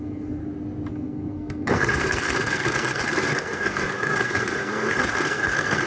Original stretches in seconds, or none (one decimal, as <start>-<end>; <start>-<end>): 0.4-0.9